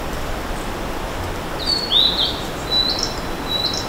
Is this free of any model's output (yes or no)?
yes